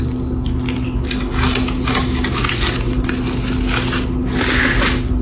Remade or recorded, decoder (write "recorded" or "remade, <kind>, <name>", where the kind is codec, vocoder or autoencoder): recorded